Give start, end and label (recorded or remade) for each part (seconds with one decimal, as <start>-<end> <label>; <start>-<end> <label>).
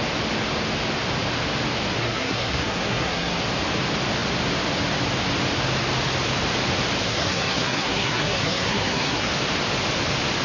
0.0-2.0 recorded; 2.0-3.4 remade; 3.4-7.0 recorded; 7.0-9.3 remade; 9.3-10.4 recorded